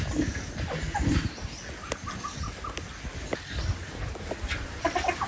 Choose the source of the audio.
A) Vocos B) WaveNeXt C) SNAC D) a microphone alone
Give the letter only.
D